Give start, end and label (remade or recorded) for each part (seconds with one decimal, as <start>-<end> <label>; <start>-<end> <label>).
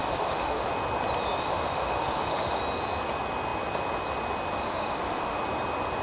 0.0-0.7 remade; 0.7-1.4 recorded; 1.4-2.6 remade; 2.6-4.6 recorded; 4.6-5.4 remade; 5.4-6.0 recorded